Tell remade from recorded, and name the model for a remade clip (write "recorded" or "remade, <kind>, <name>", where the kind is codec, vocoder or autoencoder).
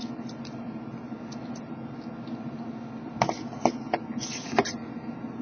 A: recorded